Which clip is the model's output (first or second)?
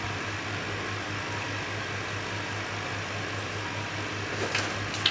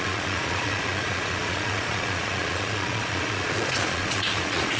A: second